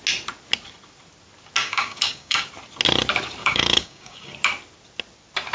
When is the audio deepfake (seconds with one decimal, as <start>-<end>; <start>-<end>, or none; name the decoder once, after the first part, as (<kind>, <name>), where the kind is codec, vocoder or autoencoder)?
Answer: 1.6-2.5 (codec, DAC); 3.4-4.3